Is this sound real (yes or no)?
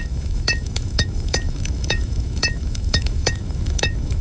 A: no